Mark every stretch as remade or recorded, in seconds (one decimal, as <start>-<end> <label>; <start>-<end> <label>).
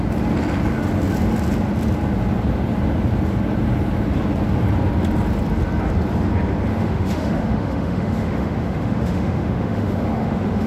0.0-6.7 recorded; 6.7-10.7 remade